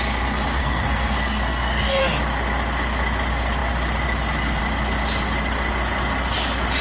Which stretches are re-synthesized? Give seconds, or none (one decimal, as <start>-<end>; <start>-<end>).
0.6-2.0